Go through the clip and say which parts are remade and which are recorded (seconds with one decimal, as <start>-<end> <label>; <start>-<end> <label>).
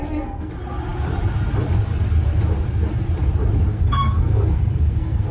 0.0-0.5 remade; 0.5-3.7 recorded; 3.7-5.3 remade